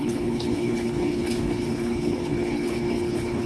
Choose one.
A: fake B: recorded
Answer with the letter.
A